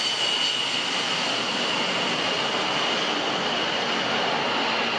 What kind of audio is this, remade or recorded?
recorded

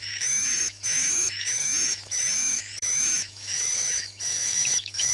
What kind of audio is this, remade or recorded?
remade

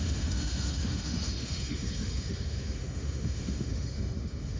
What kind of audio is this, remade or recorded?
remade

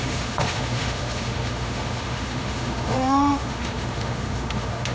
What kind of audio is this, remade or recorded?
remade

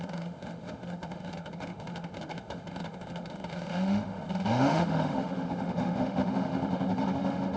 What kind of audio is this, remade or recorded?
remade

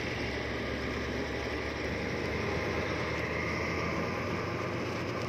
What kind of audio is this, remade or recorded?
recorded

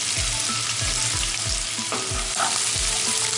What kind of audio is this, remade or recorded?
recorded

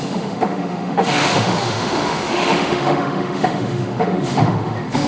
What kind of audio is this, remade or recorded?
remade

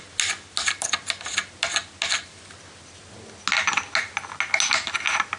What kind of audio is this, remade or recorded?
recorded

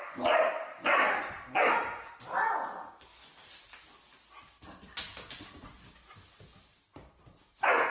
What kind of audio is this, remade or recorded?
recorded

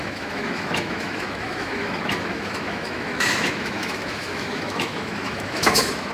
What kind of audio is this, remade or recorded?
remade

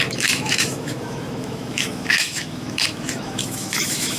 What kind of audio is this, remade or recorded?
remade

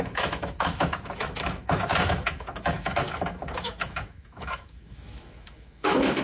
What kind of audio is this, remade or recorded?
remade